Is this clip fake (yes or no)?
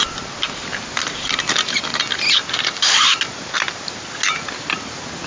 no